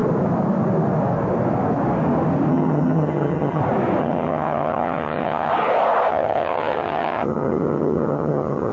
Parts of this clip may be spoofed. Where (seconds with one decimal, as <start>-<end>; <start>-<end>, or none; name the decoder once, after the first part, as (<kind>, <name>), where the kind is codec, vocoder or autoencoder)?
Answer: 2.5-3.6 (vocoder, HiFi-GAN); 4.0-5.5; 6.1-8.7